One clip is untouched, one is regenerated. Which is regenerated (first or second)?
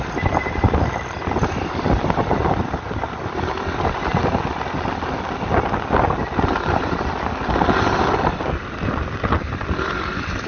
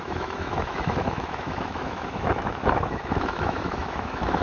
second